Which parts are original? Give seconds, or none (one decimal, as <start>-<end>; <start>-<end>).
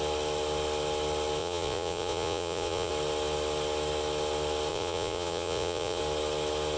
0.0-1.4; 2.9-4.7; 6.0-6.8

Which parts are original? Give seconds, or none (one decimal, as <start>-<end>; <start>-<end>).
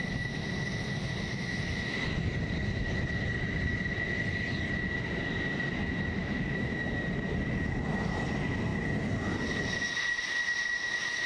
0.0-6.2; 6.9-11.3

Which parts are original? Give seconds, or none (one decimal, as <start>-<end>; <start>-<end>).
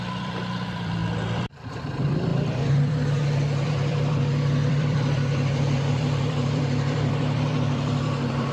none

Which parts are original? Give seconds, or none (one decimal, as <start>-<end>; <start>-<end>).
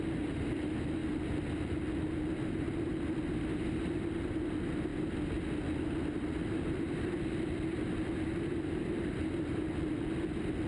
0.0-10.7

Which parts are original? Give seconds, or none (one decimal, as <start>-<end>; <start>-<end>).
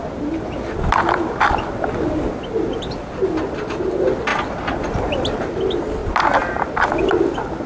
0.0-4.3; 5.6-6.0; 6.6-7.7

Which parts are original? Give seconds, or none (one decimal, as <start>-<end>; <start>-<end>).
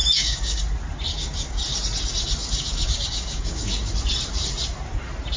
0.6-1.1; 1.6-2.4; 3.9-5.4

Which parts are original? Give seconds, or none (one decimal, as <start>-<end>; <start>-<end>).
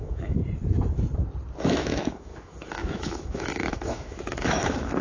0.4-1.6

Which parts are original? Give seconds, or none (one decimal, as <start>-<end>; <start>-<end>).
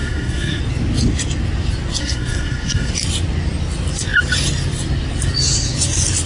0.6-2.0; 2.9-6.3